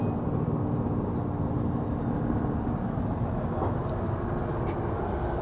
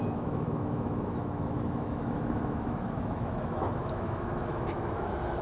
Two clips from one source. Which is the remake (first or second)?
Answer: second